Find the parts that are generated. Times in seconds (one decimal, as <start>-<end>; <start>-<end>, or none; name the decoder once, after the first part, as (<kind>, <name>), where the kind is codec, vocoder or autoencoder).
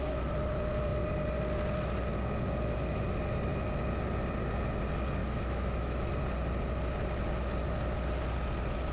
5.2-6.1 (autoencoder, DAC-VAE)